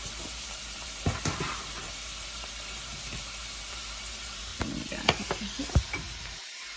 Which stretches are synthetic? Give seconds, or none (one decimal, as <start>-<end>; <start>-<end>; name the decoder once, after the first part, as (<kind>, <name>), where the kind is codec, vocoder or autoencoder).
0.0-4.5 (vocoder, BigVGAN v2); 5.9-6.8